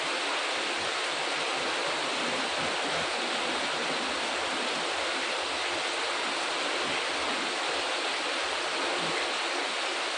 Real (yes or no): yes